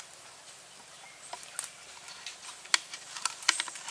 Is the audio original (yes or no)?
yes